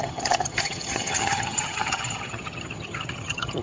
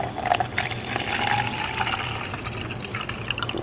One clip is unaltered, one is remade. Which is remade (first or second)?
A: first